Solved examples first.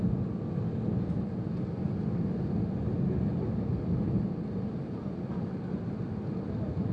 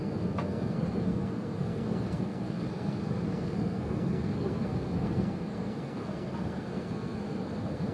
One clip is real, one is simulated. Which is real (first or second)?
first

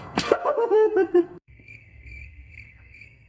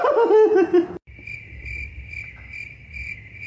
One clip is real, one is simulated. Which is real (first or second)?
second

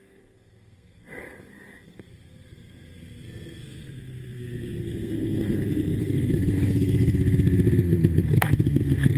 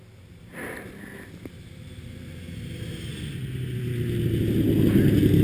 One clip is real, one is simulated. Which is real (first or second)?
second